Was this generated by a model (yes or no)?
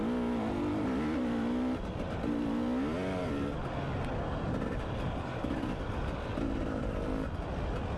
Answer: no